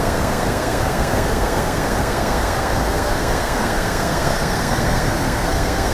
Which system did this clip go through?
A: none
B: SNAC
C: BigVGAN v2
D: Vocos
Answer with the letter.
B